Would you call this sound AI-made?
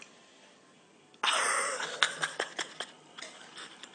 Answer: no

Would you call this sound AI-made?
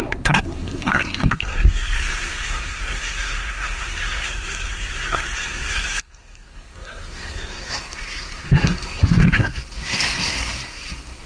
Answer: yes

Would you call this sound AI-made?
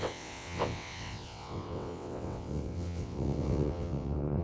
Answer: yes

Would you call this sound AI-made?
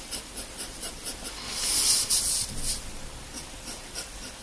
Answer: no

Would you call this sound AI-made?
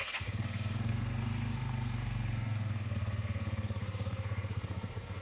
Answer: yes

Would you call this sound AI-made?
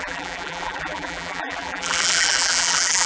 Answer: yes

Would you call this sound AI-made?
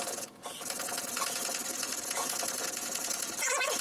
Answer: yes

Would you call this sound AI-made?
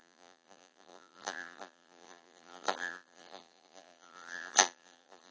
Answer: yes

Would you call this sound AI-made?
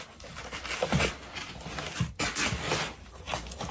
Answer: no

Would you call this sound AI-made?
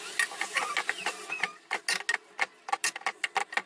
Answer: no